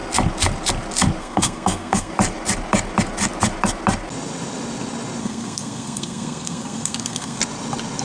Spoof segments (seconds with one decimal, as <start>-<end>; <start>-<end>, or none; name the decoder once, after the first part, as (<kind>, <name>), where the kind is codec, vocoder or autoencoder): 1.2-2.1 (codec, SNAC); 5.2-7.4